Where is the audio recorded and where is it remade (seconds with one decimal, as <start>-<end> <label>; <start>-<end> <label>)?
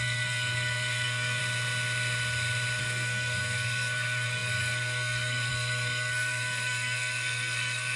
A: 0.0-1.4 remade; 1.4-2.8 recorded; 2.8-8.0 remade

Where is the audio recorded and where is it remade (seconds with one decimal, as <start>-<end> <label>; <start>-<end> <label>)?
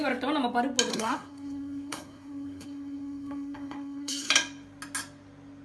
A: 0.0-0.9 recorded; 0.9-4.3 remade; 4.3-5.6 recorded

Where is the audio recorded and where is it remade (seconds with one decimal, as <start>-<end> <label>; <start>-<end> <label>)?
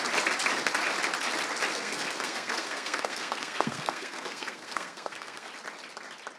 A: 0.0-1.7 recorded; 1.7-5.5 remade; 5.5-6.4 recorded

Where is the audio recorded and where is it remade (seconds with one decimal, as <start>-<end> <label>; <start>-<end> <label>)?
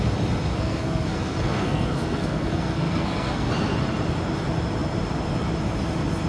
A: 0.0-0.5 recorded; 0.5-3.5 remade; 3.5-6.3 recorded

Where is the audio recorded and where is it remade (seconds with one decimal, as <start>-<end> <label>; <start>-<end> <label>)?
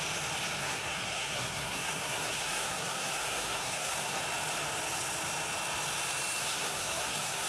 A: 0.0-0.6 recorded; 0.6-4.2 remade; 4.2-6.4 recorded; 6.4-7.5 remade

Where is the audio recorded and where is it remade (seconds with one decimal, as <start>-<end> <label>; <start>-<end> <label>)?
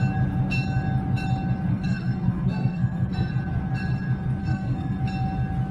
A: 0.0-1.7 recorded; 1.7-3.3 remade; 3.3-4.4 recorded; 4.4-5.0 remade; 5.0-5.7 recorded